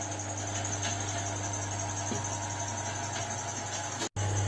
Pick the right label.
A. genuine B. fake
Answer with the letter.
A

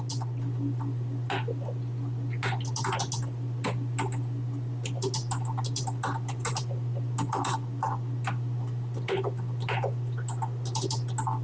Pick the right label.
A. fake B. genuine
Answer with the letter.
B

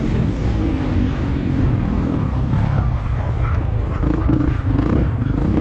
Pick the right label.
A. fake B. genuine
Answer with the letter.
A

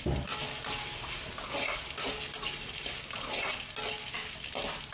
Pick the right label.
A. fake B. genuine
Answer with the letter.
B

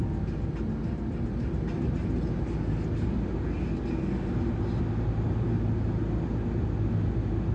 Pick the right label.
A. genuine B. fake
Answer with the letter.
A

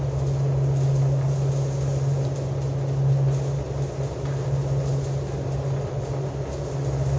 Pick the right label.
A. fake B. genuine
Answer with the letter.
B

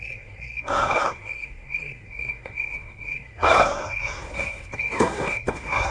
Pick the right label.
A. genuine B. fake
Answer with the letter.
B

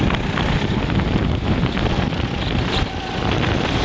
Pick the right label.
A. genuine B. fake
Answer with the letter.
A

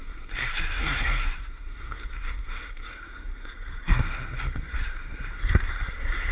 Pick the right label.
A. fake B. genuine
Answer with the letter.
A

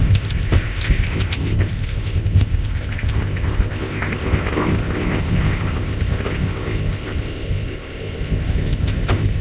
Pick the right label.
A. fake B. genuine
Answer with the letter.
A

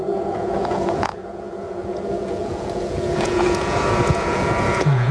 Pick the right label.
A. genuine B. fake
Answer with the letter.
B